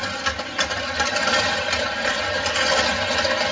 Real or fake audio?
real